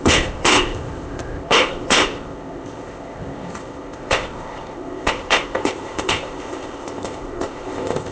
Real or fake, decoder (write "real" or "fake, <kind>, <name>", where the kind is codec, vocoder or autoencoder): fake, codec, ZipCodec